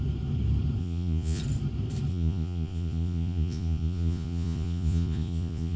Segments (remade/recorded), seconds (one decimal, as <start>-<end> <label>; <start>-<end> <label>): 0.0-0.8 recorded; 0.8-1.4 remade; 1.4-2.1 recorded; 2.1-5.8 remade